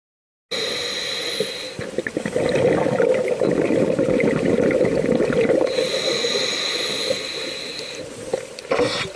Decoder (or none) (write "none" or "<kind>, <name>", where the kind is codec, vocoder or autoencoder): none